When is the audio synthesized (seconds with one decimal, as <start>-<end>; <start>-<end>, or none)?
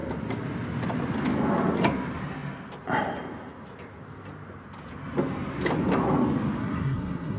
6.6-7.4